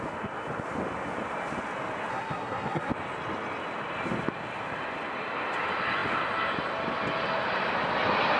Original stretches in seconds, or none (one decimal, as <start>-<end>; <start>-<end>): 0.0-2.1; 2.9-8.4